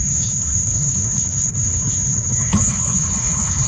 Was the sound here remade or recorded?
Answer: remade